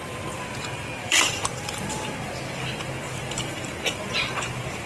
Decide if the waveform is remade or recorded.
remade